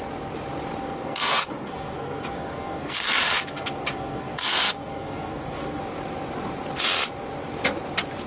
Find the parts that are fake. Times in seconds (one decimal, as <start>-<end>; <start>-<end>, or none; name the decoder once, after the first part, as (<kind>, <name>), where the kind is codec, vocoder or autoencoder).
0.8-5.8 (codec, SNAC)